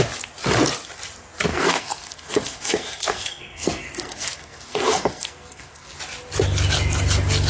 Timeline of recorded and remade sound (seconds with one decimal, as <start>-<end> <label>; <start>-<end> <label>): 0.0-1.5 recorded; 1.5-6.0 remade; 6.0-7.5 recorded

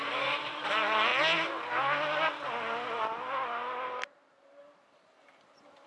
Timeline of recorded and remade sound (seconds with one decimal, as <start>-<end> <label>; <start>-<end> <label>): 0.0-5.9 recorded

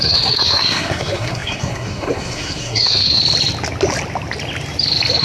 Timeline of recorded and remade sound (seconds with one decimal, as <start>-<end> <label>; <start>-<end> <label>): 0.0-3.2 remade; 3.2-5.2 recorded

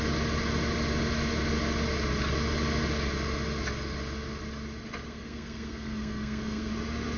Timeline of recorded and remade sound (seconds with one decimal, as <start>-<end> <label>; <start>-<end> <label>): 0.0-5.1 recorded; 5.1-6.7 remade; 6.7-7.2 recorded

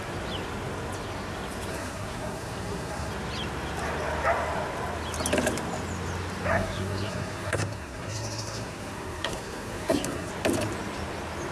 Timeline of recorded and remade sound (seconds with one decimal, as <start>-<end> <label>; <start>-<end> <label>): 0.0-1.7 recorded; 1.7-3.1 remade; 3.1-6.5 recorded; 6.5-10.3 remade; 10.3-11.5 recorded

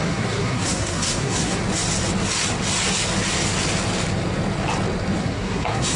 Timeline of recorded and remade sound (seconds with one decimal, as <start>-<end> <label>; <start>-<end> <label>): 0.0-1.6 remade; 1.6-5.2 recorded; 5.2-6.0 remade